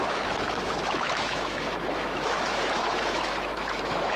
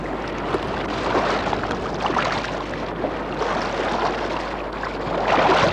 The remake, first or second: first